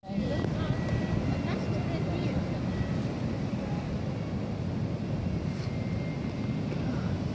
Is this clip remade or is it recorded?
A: recorded